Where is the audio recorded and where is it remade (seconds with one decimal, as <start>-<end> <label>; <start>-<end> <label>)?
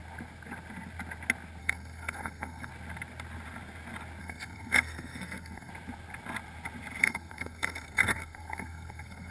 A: 0.0-1.6 recorded; 1.6-2.7 remade; 2.7-4.2 recorded; 4.2-5.7 remade; 5.7-7.0 recorded; 7.0-9.3 remade